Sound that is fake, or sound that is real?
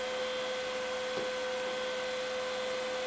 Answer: real